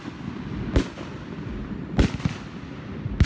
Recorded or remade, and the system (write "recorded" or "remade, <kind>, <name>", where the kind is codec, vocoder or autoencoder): recorded